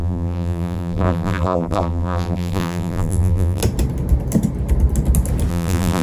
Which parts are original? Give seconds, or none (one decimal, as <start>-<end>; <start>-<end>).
3.6-5.5